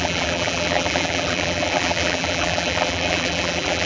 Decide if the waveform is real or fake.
fake